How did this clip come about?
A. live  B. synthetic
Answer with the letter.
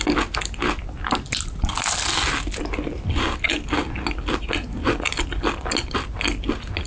A